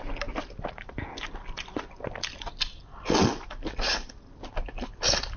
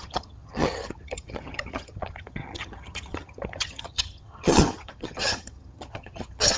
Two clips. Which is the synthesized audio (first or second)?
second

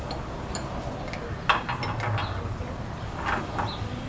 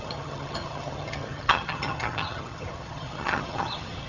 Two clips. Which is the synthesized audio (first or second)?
second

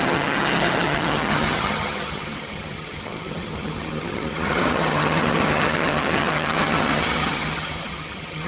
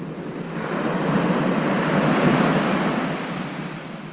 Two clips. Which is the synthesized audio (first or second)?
first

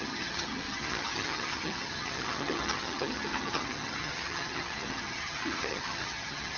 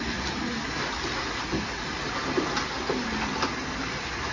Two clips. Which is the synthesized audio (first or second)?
first